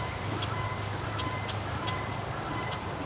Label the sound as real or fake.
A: fake